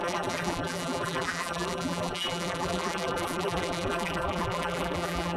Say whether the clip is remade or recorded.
remade